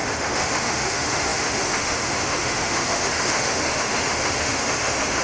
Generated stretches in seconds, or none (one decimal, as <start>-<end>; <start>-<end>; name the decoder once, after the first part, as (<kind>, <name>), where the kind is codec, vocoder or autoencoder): 0.0-5.2 (autoencoder, DAC-VAE)